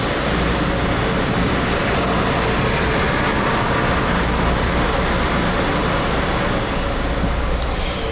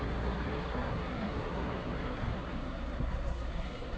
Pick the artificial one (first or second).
second